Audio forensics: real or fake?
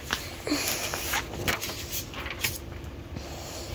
real